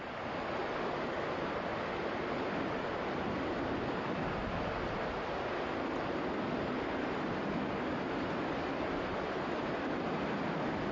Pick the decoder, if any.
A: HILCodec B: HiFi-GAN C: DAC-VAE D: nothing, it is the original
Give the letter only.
D